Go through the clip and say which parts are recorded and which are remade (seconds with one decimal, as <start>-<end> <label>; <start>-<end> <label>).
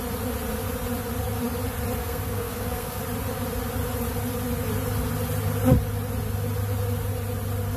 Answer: 0.0-2.0 recorded; 2.0-3.0 remade; 3.0-7.8 recorded